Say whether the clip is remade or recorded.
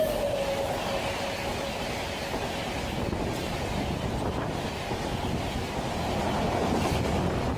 recorded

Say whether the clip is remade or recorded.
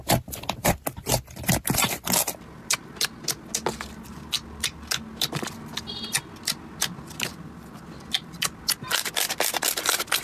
recorded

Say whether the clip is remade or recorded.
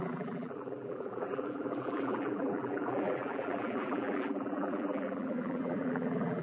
remade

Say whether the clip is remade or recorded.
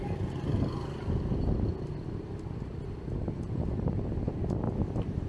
recorded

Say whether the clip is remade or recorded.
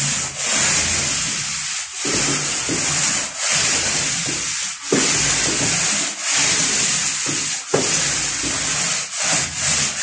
recorded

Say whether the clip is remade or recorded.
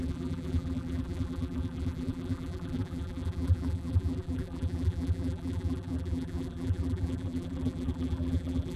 remade